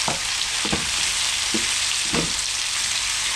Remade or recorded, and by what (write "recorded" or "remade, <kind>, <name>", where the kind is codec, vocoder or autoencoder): remade, vocoder, BigVGAN v2